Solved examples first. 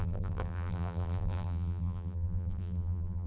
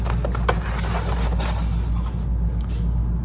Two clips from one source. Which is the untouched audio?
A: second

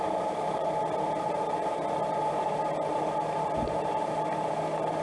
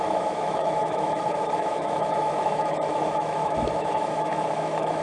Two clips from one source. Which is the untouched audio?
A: first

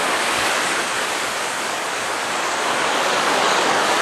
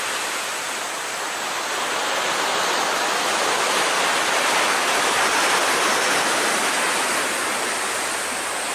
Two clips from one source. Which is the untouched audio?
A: second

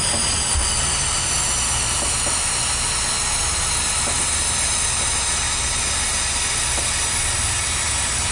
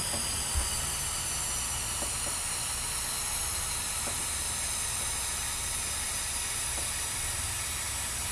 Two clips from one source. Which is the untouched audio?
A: first